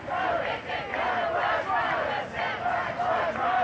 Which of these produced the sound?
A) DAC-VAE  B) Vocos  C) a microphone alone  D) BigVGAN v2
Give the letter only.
C